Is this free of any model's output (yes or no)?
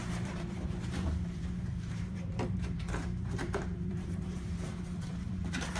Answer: no